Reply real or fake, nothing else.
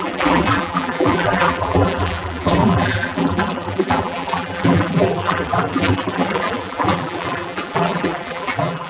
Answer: fake